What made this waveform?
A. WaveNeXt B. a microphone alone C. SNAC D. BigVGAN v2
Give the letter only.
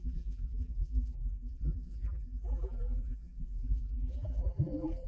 D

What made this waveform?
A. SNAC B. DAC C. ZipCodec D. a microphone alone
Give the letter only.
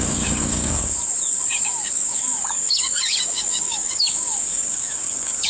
B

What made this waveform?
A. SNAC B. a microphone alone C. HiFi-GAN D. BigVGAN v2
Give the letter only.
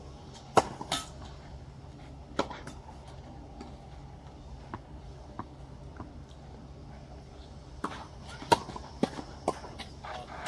B